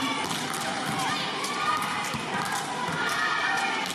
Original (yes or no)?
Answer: no